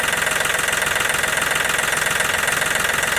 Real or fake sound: real